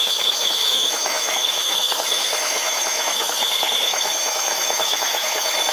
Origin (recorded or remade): remade